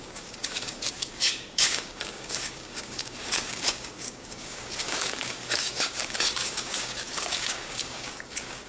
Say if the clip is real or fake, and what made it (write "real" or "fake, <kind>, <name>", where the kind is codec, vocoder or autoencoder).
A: fake, codec, DAC